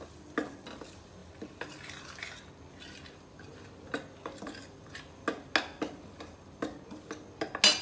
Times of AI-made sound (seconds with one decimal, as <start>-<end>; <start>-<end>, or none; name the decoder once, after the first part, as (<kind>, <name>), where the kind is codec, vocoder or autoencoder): none